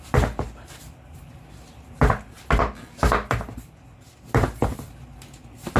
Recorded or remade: recorded